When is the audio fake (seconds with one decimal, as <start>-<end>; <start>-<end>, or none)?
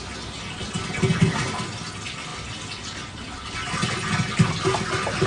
none